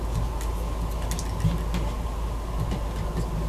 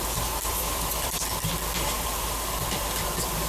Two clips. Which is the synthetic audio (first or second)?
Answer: second